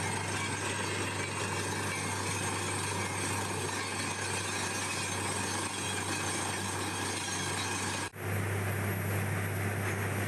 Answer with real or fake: real